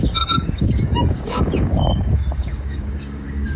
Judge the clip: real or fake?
fake